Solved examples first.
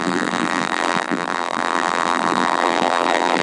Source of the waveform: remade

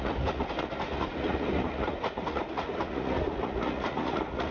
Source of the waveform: remade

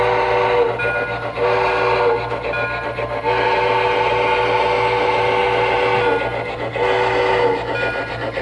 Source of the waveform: recorded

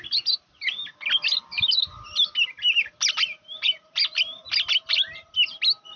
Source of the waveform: recorded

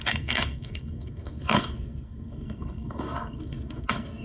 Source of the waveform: remade